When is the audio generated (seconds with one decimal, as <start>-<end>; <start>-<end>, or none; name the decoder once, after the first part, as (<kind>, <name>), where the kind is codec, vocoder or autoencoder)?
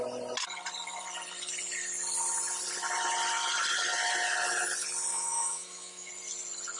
5.1-6.1 (autoencoder, DAC-VAE)